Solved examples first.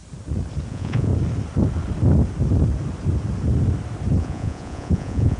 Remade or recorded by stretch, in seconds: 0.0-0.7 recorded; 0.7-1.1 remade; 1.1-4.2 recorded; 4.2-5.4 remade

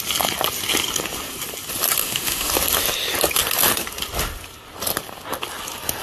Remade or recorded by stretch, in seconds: 0.0-2.0 recorded; 2.0-2.5 remade; 2.5-6.0 recorded

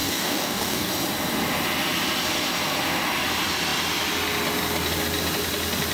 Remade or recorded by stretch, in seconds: 0.0-0.9 remade; 0.9-5.9 recorded

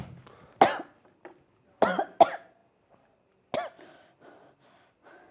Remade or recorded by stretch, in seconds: 0.0-5.3 recorded